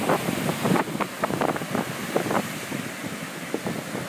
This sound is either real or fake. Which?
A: real